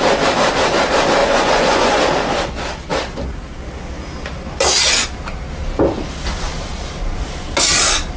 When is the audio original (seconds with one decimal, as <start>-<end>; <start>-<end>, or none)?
0.0-1.2; 2.0-8.2